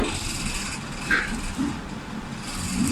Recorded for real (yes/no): yes